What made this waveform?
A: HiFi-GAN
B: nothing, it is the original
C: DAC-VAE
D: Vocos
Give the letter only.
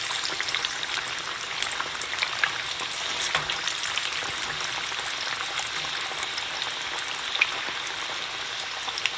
B